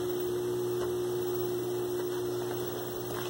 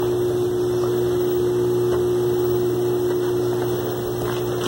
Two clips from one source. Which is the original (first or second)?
second